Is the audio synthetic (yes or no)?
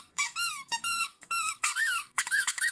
yes